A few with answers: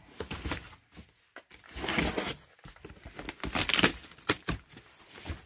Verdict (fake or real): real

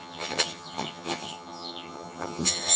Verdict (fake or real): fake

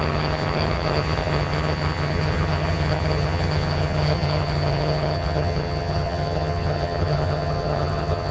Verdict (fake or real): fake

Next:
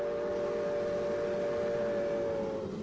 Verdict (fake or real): real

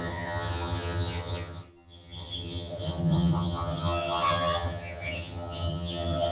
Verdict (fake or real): fake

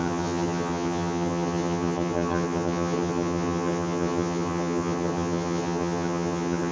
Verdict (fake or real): fake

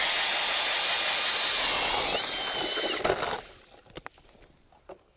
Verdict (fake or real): real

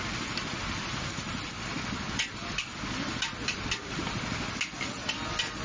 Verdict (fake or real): real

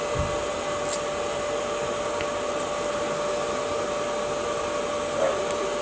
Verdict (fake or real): real